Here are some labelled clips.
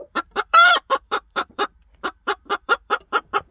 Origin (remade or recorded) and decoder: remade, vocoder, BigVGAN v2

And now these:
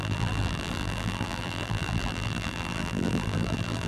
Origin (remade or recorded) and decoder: remade, vocoder, BigVGAN v2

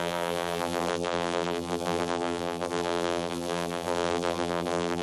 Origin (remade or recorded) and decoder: remade, vocoder, BigVGAN v2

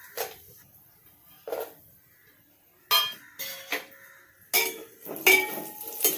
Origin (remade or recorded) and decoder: recorded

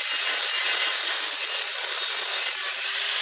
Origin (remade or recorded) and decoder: recorded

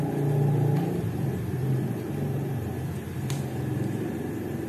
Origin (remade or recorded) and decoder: recorded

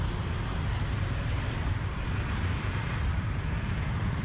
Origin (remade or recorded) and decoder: remade, vocoder, BigVGAN v2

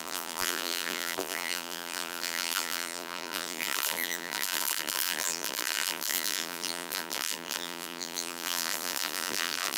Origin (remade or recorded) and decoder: remade, vocoder, BigVGAN v2